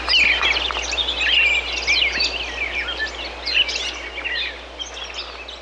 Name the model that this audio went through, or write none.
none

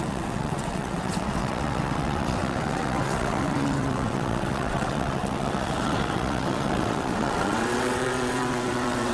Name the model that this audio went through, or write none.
vocoder, WaveNeXt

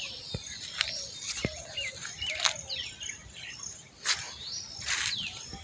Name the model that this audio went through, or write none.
none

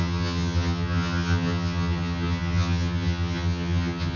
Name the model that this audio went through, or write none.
vocoder, HiFi-GAN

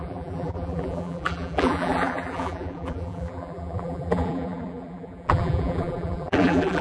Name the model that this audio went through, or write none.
vocoder, BigVGAN v2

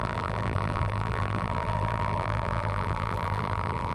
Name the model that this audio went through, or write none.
vocoder, BigVGAN v2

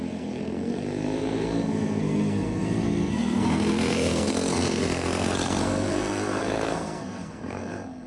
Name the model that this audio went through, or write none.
codec, SNAC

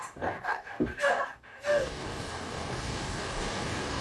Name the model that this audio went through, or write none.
codec, DAC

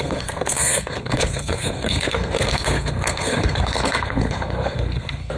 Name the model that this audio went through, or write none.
codec, SNAC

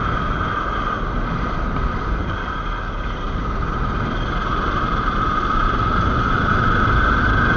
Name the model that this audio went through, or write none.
none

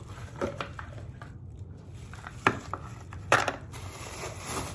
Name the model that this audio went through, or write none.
vocoder, BigVGAN v2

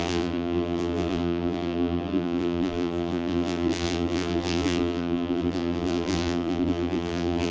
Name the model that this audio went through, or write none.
vocoder, BigVGAN v2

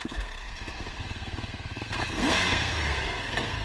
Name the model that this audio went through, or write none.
codec, SNAC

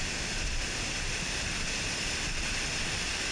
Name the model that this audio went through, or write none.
none